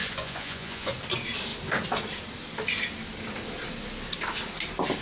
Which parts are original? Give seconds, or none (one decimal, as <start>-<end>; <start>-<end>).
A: 0.9-5.0